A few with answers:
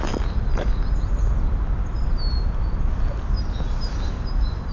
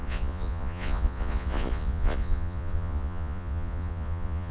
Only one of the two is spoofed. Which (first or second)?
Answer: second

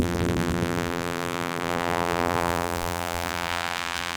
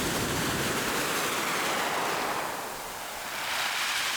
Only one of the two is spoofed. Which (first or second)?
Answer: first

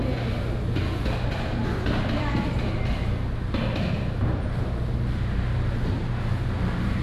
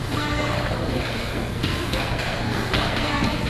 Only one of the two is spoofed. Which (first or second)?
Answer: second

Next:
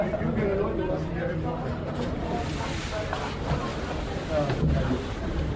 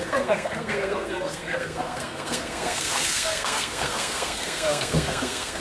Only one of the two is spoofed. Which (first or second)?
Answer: second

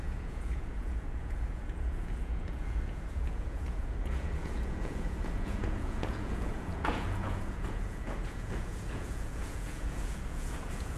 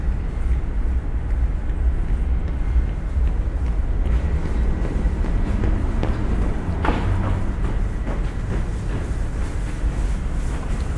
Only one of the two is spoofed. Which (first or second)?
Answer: first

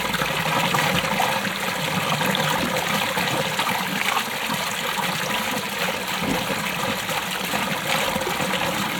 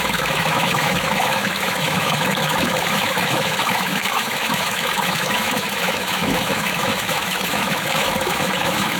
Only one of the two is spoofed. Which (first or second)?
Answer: second